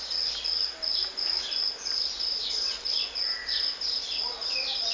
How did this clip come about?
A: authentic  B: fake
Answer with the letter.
A